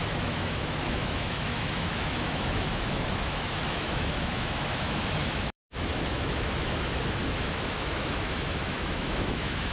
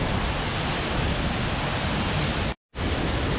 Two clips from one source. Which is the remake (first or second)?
first